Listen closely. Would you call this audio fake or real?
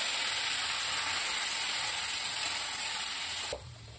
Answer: real